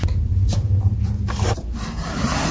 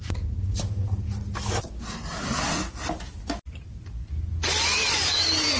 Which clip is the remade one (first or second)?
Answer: first